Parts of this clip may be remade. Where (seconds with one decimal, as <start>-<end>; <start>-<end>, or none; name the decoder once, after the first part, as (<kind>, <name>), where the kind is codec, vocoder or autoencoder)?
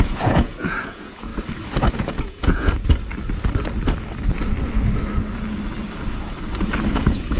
0.0-1.3 (vocoder, Vocos); 1.9-2.9; 6.9-7.4